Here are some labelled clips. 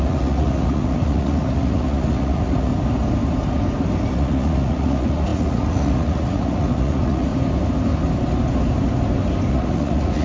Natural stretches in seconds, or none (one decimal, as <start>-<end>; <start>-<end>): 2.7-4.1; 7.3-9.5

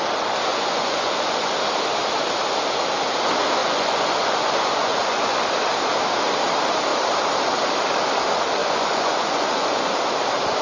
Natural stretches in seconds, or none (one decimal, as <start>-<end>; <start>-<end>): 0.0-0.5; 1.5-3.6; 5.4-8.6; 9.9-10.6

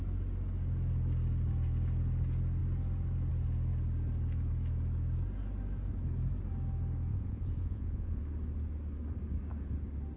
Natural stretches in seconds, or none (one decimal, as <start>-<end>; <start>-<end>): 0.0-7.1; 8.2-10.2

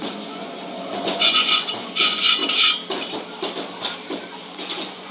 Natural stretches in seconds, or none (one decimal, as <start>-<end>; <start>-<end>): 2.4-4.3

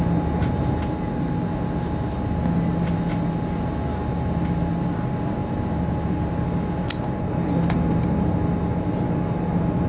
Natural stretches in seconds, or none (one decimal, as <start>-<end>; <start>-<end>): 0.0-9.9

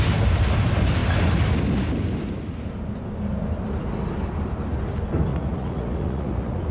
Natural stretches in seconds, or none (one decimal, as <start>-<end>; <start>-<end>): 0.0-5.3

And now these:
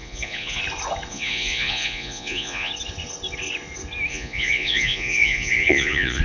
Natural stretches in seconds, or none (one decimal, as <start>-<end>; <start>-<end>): 0.6-1.1; 2.7-4.1